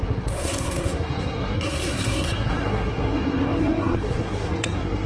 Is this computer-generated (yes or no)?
yes